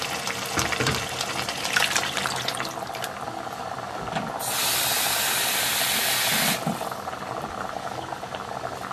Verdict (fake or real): real